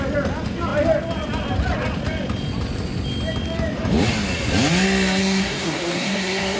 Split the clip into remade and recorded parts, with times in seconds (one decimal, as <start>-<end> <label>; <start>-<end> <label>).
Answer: 0.0-5.2 recorded; 5.2-6.6 remade